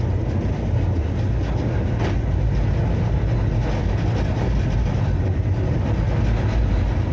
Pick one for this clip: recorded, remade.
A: recorded